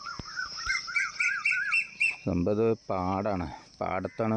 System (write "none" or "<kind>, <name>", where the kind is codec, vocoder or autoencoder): none